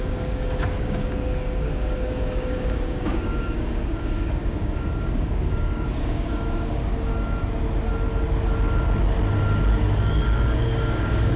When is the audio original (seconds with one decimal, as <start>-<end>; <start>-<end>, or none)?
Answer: 7.1-9.7